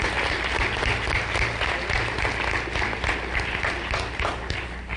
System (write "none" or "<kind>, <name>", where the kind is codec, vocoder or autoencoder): none